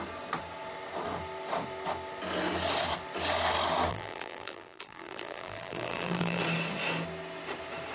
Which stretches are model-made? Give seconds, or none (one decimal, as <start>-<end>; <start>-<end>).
3.9-6.4